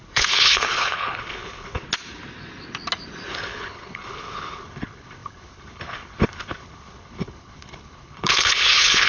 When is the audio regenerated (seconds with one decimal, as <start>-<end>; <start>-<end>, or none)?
0.0-1.8; 3.3-9.1